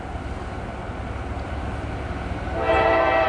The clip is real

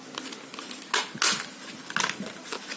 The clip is real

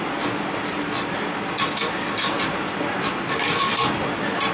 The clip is real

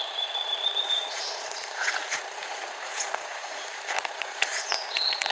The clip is fake